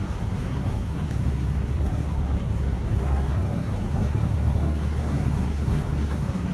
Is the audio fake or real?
fake